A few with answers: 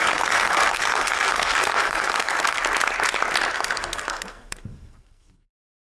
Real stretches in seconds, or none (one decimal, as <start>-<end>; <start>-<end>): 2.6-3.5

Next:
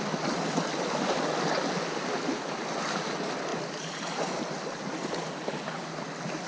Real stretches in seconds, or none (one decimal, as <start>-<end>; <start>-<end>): 0.0-6.5

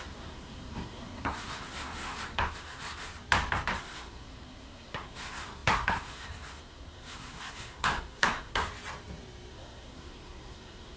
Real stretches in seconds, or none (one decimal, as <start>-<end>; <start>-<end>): 3.1-3.8; 8.7-9.5

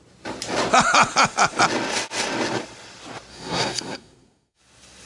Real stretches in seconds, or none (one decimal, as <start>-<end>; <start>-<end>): 0.0-3.3; 4.6-5.1

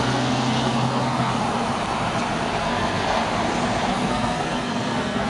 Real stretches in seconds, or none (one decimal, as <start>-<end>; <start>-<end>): 1.3-2.6; 3.2-3.9

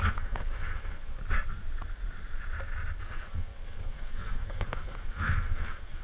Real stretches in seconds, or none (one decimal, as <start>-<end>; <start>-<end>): 1.2-3.0

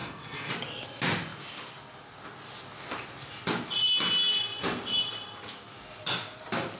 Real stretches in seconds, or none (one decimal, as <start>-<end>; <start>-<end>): 0.5-6.8

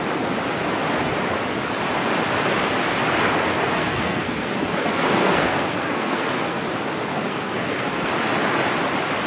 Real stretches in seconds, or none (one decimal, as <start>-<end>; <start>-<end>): 0.0-3.5; 6.6-7.1; 8.1-9.3